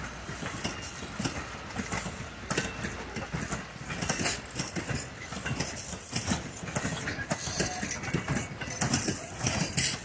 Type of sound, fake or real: real